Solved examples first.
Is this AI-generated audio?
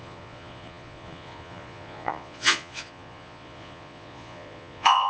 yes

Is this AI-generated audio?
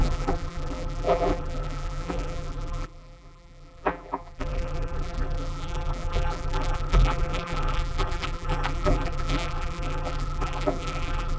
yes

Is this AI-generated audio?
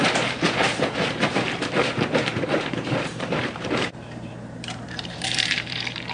yes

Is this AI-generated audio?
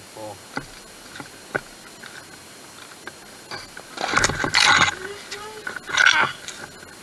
no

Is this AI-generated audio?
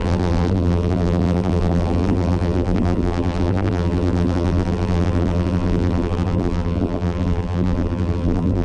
yes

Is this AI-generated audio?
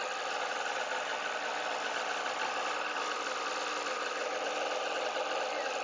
no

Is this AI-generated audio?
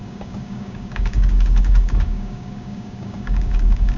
yes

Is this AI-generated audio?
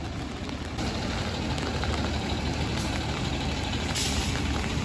no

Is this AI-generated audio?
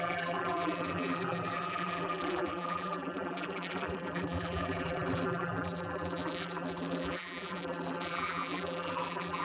yes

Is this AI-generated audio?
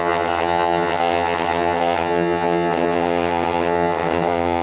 yes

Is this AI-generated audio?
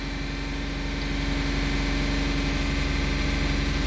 no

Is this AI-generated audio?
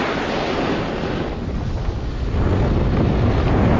no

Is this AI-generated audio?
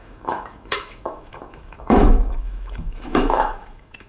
yes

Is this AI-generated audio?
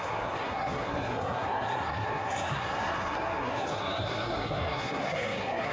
yes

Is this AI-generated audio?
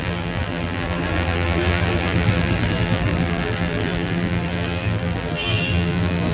yes